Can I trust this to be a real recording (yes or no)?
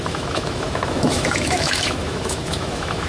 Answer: no